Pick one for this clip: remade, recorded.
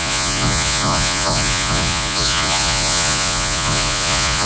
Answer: remade